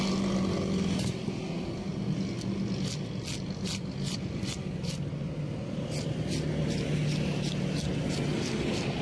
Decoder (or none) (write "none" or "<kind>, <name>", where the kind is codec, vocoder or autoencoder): none